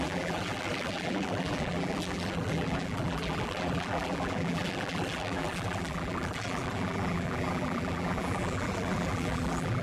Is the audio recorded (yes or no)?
no